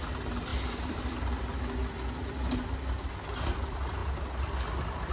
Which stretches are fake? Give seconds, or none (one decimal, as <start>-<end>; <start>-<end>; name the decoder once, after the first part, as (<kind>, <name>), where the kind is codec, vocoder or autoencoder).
none